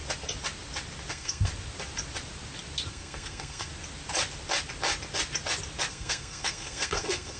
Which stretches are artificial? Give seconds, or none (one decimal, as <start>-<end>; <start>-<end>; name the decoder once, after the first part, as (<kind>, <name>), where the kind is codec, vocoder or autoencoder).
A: 1.1-1.5 (codec, SNAC); 2.9-3.7; 5.9-7.4